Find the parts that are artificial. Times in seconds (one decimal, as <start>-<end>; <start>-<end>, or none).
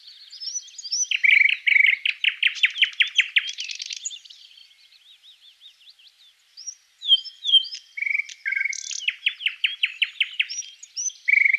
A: 0.0-0.5; 4.0-11.6